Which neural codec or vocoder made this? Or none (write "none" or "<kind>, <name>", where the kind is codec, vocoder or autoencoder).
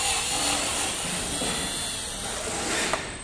none